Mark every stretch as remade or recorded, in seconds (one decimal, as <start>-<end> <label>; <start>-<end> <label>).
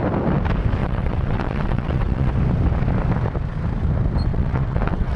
0.0-0.8 recorded; 0.8-2.3 remade; 2.3-4.3 recorded; 4.3-5.2 remade